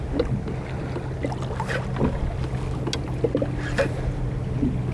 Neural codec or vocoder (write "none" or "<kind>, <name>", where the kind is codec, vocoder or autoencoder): none